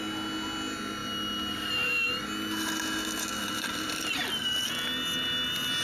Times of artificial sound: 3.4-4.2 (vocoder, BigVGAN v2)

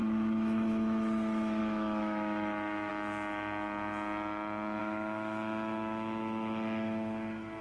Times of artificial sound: 0.0-2.9 (autoencoder, DAC-VAE); 4.8-7.6

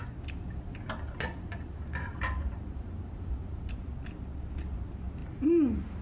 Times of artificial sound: 1.5-3.9 (vocoder, BigVGAN v2); 5.2-6.0

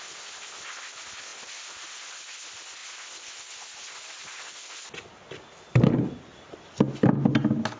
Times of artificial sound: none

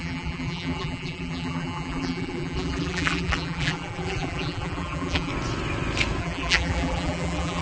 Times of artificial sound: 0.0-5.3 (vocoder, BigVGAN v2); 6.2-7.6

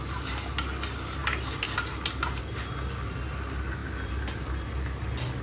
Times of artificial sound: none

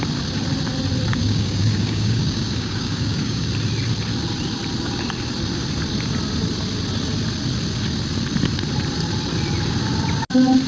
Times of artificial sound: 1.1-3.5 (codec, DAC)